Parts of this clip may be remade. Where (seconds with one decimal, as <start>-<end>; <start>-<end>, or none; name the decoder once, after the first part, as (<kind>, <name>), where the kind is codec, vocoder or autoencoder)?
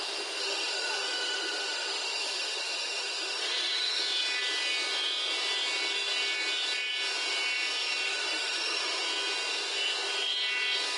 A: 0.4-4.0 (autoencoder, DAC-VAE); 8.1-9.0